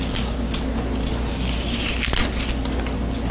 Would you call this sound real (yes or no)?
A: yes